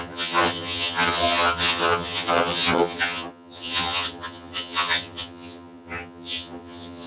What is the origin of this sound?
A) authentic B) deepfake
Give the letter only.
B